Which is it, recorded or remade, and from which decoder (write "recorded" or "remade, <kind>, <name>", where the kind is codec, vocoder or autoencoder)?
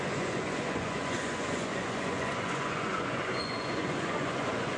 remade, vocoder, Vocos